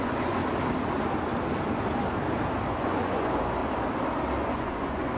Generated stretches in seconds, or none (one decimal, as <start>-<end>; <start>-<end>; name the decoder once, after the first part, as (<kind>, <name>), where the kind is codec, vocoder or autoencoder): 0.0-0.4 (vocoder, Vocos); 2.7-3.6; 4.4-5.2